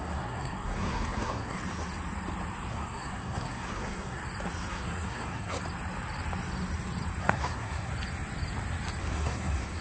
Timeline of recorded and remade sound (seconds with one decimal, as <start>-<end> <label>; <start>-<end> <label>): 0.0-1.6 remade; 1.6-2.7 recorded; 2.7-4.2 remade; 4.2-4.7 recorded; 4.7-5.6 remade; 5.6-7.2 recorded; 7.2-7.9 remade; 7.9-9.0 recorded; 9.0-9.8 remade